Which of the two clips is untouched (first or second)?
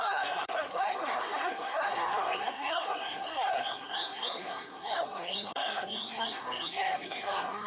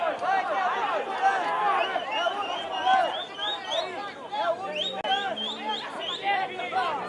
second